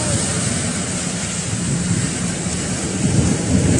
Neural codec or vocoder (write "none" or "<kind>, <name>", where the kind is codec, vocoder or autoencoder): none